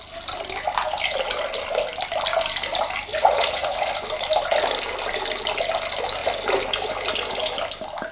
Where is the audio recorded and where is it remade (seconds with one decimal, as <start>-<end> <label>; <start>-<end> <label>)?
0.0-3.1 recorded; 3.1-3.9 remade; 3.9-8.1 recorded